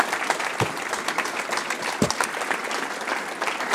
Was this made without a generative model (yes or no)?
yes